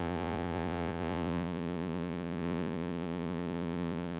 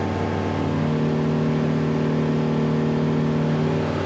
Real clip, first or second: second